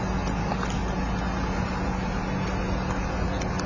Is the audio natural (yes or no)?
yes